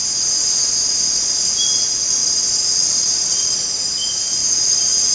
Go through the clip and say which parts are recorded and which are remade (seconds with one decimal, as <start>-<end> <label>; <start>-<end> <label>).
0.0-1.1 recorded; 1.1-2.2 remade; 2.2-2.9 recorded; 2.9-5.1 remade